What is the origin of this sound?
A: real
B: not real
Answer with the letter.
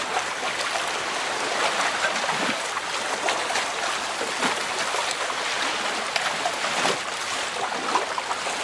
A